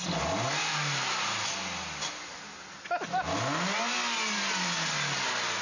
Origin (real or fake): real